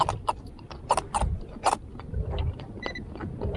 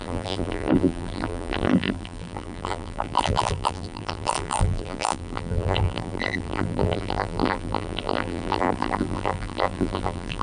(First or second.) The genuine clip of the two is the first